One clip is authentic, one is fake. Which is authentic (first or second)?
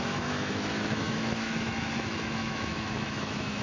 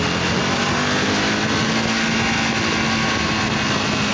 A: second